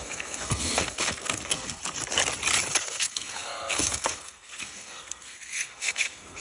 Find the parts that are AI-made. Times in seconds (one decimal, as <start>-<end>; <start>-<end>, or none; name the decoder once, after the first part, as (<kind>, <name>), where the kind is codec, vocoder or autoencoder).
0.0-1.8 (codec, SNAC); 2.8-6.4